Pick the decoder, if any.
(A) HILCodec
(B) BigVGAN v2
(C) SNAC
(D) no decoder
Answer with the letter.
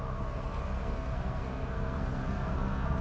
C